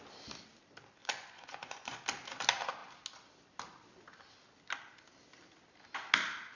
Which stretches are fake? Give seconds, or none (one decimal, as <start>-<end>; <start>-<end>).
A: 1.0-2.0